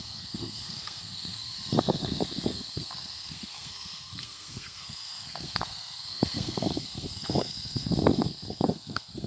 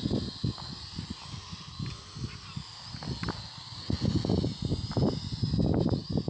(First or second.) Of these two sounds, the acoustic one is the second